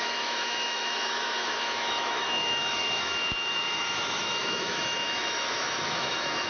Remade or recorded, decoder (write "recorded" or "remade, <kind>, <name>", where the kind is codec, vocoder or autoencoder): remade, autoencoder, DAC-VAE